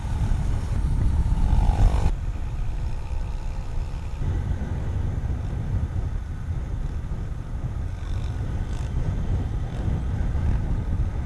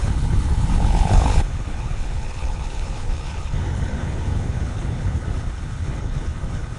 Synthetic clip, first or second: second